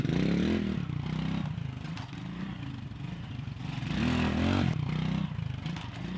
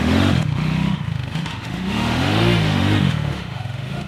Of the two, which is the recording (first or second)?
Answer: first